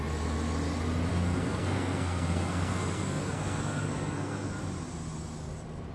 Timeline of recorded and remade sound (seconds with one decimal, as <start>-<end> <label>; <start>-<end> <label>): 0.0-1.1 recorded; 1.1-4.5 remade; 4.5-5.9 recorded